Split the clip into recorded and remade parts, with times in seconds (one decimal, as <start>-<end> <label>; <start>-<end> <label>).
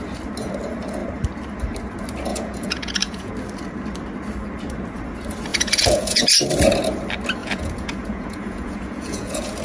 0.0-2.3 recorded; 2.3-3.3 remade; 3.3-5.5 recorded; 5.5-6.2 remade; 6.2-7.4 recorded; 7.4-9.6 remade